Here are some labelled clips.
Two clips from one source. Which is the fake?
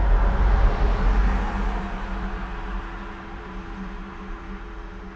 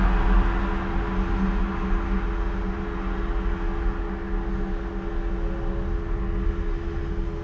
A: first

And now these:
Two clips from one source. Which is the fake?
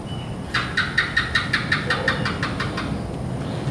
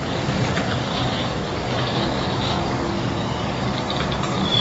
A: second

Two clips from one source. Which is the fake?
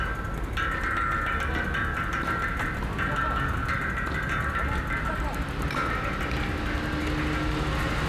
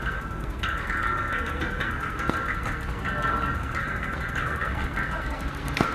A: second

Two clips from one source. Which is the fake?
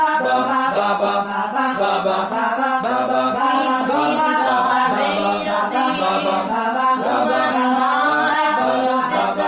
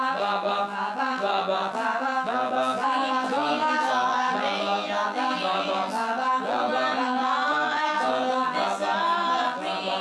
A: second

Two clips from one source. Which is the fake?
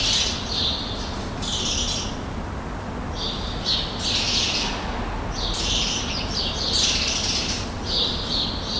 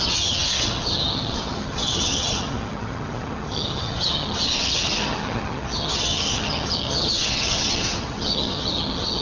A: second